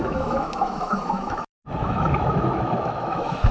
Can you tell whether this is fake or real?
fake